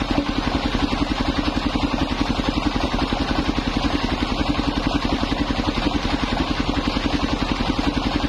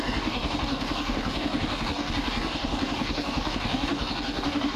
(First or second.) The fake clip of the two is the second